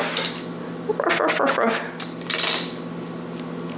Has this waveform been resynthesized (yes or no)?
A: no